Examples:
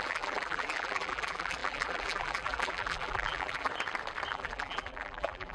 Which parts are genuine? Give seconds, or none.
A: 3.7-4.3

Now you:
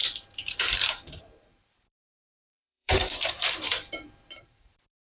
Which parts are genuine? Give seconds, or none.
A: 2.0-2.4

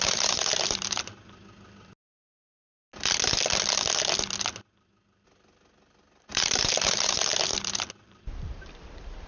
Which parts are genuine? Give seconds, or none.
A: 1.1-6.3

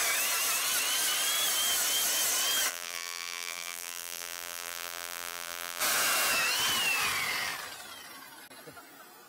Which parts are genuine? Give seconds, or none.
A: 0.0-2.7; 5.8-9.3

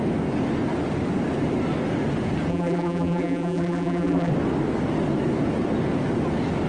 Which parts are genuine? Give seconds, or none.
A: 0.0-2.5; 4.3-6.7

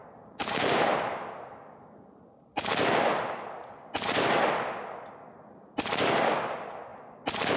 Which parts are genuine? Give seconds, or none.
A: 0.9-7.6

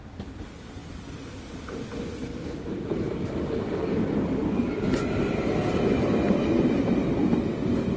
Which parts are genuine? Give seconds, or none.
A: 0.0-2.3; 3.0-8.0